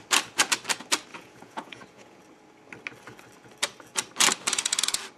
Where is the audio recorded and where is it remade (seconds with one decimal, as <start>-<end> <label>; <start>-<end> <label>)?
0.0-1.1 recorded; 1.1-2.2 remade; 2.2-5.2 recorded